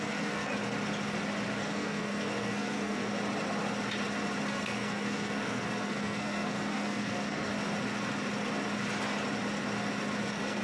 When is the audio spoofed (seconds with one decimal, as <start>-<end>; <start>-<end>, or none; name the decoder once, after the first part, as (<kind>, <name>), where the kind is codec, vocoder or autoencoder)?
0.0-0.5 (codec, SNAC); 1.6-3.1; 4.5-7.5; 10.2-10.6